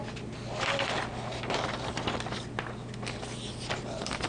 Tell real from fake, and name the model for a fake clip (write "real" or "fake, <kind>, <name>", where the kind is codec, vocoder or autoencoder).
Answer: real